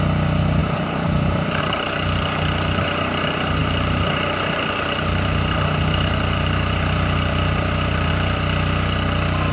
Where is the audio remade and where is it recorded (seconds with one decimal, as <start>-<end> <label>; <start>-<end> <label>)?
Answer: 0.0-0.6 recorded; 0.6-1.6 remade; 1.6-3.6 recorded; 3.6-8.1 remade; 8.1-9.5 recorded